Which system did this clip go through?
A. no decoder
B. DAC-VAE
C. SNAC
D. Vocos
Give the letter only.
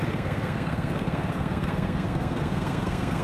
C